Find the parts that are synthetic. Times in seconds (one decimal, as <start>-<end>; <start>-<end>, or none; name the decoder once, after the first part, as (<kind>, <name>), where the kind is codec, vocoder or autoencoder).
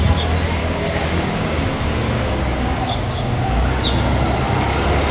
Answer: 0.6-3.7 (codec, DAC)